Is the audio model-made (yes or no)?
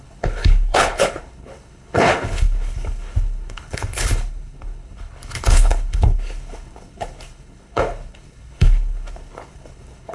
yes